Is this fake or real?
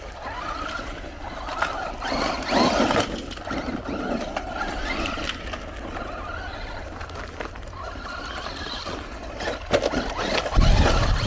real